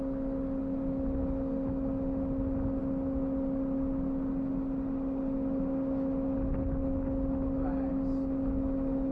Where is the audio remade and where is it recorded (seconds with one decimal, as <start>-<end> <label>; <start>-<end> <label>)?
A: 0.0-9.1 recorded